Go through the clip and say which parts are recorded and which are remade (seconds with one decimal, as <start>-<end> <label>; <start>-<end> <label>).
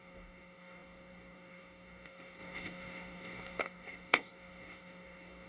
0.0-5.5 remade